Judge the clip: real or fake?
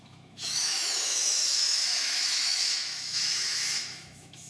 fake